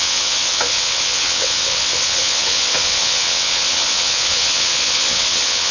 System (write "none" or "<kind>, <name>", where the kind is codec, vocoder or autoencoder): vocoder, WaveNeXt